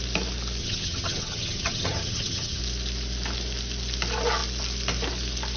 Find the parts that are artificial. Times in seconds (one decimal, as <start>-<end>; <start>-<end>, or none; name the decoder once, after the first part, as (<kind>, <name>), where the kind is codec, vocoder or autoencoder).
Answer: 0.6-2.6 (vocoder, HiFi-GAN)